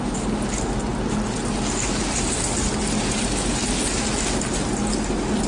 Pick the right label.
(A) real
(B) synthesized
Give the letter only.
A